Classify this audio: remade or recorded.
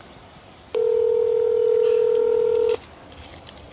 recorded